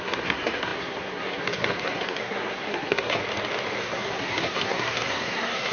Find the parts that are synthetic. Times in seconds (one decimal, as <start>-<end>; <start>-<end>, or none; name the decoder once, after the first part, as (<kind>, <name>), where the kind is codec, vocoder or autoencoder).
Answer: 0.0-3.2 (codec, SNAC); 3.8-5.7